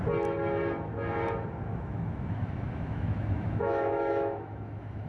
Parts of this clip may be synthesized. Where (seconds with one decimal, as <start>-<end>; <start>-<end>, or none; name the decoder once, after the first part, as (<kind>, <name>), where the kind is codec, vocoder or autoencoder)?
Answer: 1.7-5.1 (autoencoder, DAC-VAE)